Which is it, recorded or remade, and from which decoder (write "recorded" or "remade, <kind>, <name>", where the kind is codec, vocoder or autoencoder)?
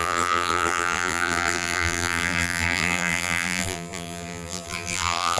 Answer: remade, vocoder, BigVGAN v2